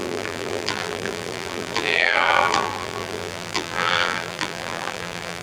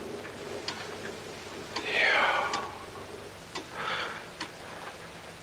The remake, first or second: first